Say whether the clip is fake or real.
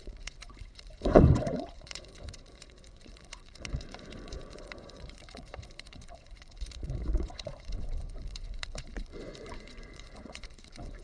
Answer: fake